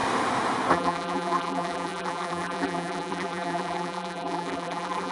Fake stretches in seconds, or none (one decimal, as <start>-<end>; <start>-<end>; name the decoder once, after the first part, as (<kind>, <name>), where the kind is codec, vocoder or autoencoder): 0.7-5.1 (vocoder, BigVGAN v2)